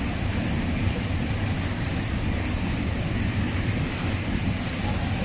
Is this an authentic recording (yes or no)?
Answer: yes